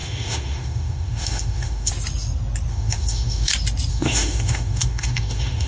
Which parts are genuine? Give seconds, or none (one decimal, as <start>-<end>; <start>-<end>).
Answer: 1.9-2.7; 3.5-3.9